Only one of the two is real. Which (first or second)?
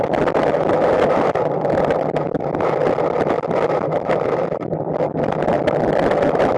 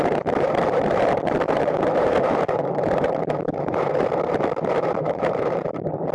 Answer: first